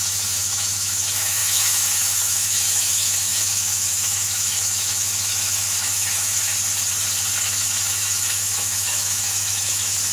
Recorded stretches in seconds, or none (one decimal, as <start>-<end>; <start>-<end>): 6.5-7.5